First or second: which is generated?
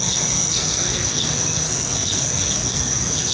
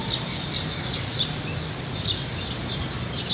first